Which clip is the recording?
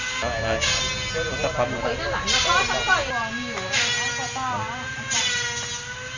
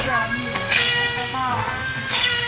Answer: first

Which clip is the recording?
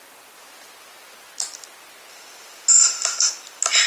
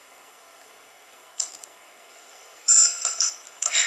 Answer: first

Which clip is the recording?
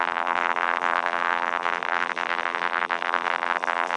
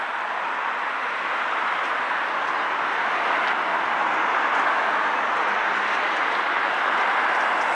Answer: second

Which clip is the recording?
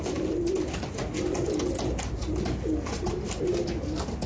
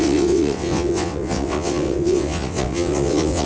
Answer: first